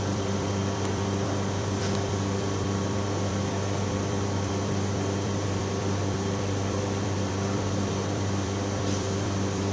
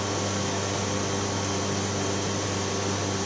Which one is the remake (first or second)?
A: first